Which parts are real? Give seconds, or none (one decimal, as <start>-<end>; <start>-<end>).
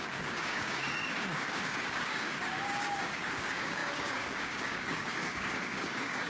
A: none